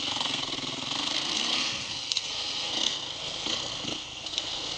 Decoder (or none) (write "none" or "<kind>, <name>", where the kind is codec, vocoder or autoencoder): codec, SNAC